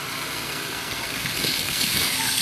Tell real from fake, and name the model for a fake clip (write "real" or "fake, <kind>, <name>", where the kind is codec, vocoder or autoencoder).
fake, codec, SNAC